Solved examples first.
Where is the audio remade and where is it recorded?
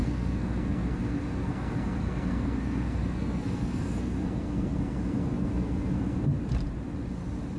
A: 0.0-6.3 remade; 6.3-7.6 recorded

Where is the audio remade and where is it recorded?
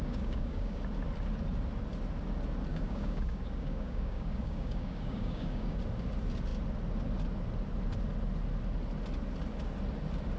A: 0.0-0.8 remade; 0.8-2.7 recorded; 2.7-5.8 remade; 5.8-10.4 recorded